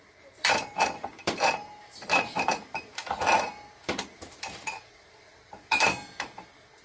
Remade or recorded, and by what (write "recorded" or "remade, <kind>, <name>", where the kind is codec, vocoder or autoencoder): remade, vocoder, BigVGAN v2